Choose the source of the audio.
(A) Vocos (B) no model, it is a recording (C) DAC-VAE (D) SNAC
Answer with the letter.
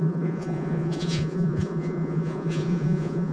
A